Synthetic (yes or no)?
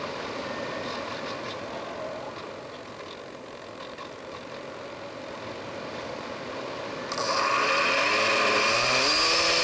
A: no